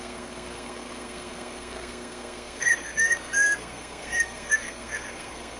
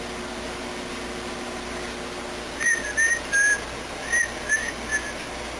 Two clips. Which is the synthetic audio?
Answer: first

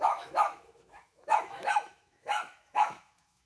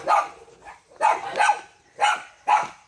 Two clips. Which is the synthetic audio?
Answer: first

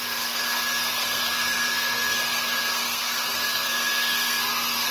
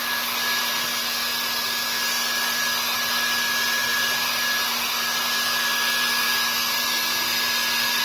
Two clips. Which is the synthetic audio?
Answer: first